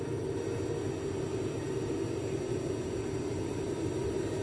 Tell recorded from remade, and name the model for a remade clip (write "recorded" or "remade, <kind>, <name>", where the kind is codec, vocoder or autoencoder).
recorded